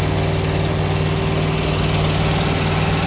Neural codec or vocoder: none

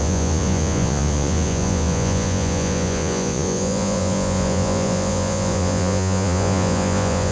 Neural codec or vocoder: vocoder, Vocos